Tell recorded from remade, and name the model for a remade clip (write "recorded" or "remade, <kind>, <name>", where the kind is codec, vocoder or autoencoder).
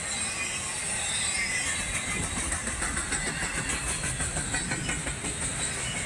recorded